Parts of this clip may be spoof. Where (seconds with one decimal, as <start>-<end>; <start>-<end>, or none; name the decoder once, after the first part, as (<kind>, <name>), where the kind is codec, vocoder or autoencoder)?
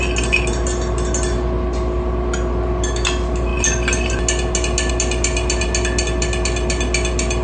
none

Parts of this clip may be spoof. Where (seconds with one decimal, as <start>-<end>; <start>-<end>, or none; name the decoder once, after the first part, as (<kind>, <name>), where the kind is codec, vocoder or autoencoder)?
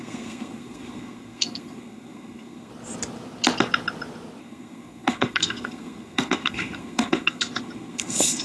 0.0-2.7 (codec, SNAC); 4.4-8.4